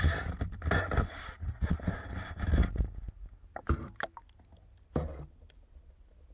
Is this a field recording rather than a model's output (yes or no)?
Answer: yes